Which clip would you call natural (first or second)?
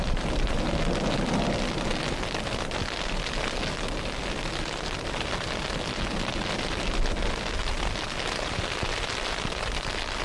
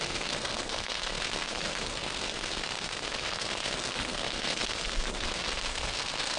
first